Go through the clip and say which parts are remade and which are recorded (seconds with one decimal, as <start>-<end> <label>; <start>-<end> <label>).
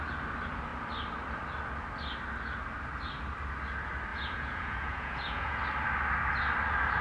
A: 0.0-4.1 recorded; 4.1-5.6 remade; 5.6-7.0 recorded